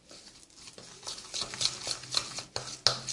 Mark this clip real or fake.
real